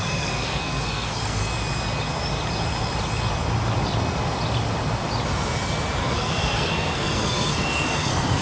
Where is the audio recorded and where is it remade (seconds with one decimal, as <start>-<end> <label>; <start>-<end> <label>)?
0.0-1.4 remade; 1.4-6.0 recorded; 6.0-8.4 remade